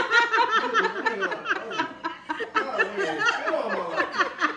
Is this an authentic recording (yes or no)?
yes